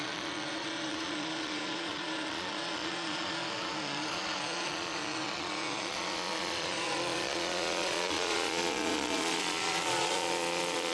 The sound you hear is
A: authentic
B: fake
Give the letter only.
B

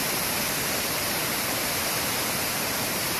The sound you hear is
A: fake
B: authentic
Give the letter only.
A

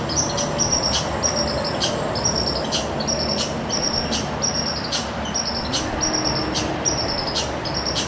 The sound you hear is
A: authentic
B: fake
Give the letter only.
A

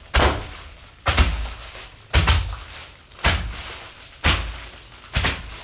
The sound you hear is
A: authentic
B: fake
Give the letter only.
A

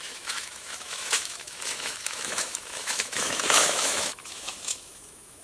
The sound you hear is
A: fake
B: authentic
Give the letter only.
A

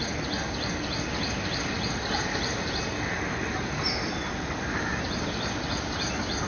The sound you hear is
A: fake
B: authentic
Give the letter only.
B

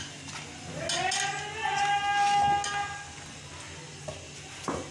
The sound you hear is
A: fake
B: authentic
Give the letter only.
B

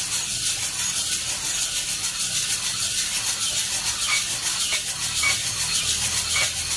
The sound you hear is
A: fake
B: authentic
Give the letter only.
B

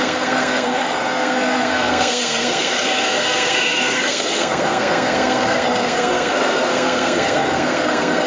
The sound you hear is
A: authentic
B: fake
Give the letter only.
B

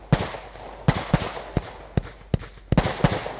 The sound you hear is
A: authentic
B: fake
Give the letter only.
A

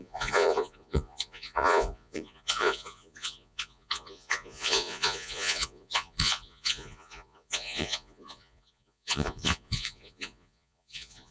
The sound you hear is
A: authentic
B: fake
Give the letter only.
B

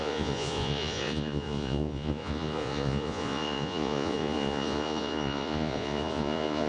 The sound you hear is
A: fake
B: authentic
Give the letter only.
A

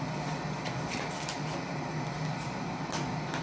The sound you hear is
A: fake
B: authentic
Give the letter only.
B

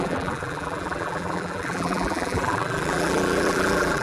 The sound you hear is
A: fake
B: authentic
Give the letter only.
A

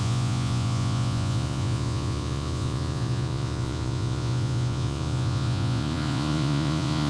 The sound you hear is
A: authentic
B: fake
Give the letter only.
B